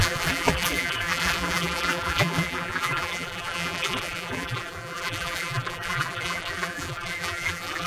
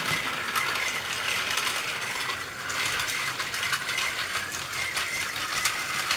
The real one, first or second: second